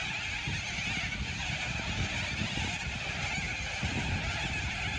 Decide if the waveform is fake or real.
real